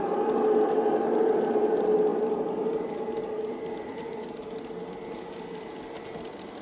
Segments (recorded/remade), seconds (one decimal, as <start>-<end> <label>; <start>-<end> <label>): 0.0-2.1 recorded; 2.1-3.6 remade; 3.6-6.6 recorded